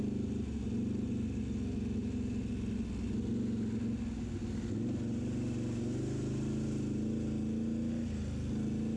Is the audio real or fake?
real